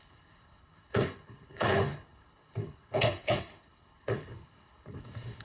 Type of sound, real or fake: fake